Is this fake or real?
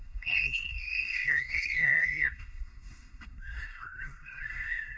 fake